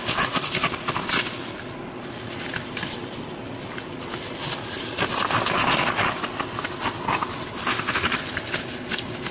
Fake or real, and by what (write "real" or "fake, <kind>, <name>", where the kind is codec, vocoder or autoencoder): real